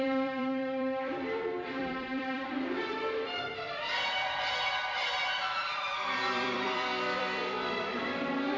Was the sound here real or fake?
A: fake